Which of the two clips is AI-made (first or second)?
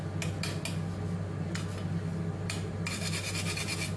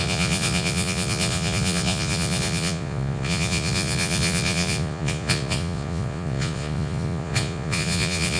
second